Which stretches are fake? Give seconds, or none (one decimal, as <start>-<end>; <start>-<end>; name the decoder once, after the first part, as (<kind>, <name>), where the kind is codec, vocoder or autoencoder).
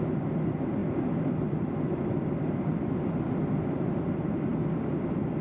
none